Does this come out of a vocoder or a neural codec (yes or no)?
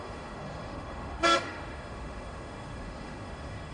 yes